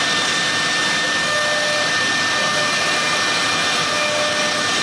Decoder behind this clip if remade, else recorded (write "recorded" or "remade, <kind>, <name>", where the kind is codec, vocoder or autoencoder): recorded